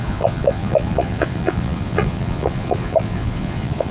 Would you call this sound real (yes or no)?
no